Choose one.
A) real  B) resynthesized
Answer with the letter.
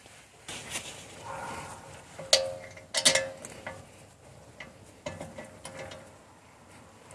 A